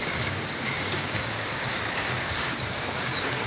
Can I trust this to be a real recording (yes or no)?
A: no